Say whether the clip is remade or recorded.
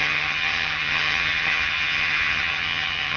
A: remade